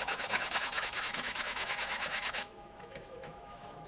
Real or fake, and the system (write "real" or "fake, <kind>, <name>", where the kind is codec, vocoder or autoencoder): fake, autoencoder, DAC-VAE